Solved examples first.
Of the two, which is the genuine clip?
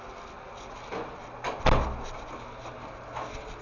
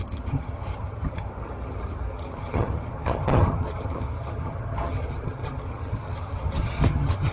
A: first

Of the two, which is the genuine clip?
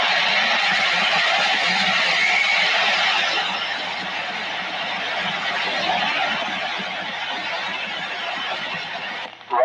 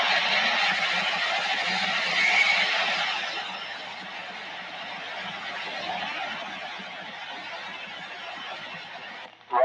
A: second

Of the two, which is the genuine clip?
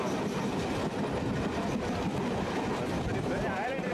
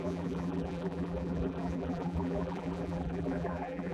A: first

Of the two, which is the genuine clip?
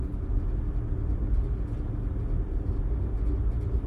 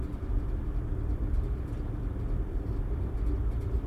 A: first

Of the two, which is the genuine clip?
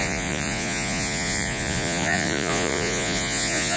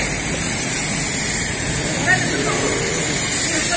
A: second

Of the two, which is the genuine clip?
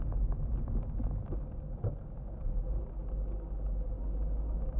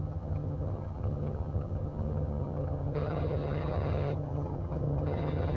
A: first